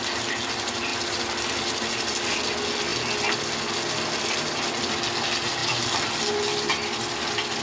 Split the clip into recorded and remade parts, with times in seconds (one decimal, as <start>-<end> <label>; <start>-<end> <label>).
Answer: 0.0-7.6 recorded